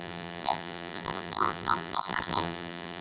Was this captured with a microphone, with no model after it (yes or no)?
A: no